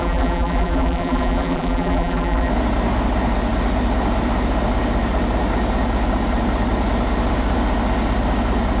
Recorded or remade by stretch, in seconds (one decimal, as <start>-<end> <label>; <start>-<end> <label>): 0.0-2.5 remade; 2.5-8.8 recorded